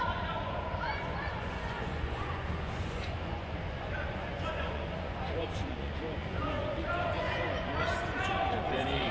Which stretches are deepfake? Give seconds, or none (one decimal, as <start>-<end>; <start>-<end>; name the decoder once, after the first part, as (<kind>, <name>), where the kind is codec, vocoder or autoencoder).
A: 0.0-9.1 (vocoder, Vocos)